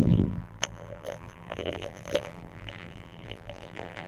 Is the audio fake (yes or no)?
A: yes